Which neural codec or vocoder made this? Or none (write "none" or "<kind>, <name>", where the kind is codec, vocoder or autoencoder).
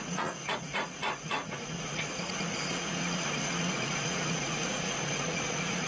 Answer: vocoder, Vocos